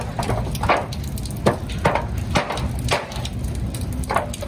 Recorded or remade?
recorded